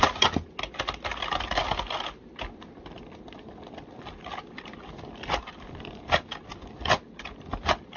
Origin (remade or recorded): recorded